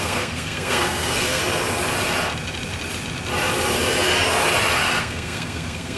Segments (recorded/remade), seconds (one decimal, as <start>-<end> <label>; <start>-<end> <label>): 0.0-1.4 remade; 1.4-5.0 recorded; 5.0-6.0 remade